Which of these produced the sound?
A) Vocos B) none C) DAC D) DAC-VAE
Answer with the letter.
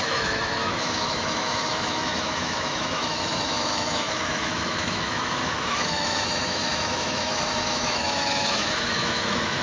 D